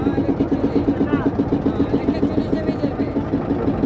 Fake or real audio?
real